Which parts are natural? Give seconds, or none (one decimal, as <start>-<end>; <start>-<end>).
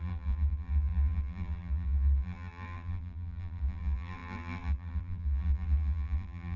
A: none